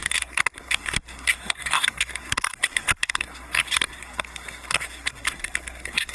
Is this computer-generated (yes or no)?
yes